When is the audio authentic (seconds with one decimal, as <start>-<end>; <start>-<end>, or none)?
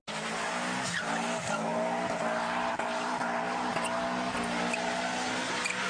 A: 0.0-1.7; 3.7-5.9